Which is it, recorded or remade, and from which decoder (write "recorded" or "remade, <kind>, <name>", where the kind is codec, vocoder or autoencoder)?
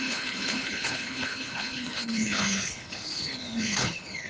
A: remade, codec, HILCodec